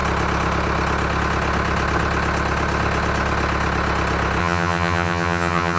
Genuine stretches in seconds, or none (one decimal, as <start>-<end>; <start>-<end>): 0.0-4.4